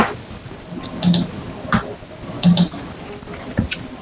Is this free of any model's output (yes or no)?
yes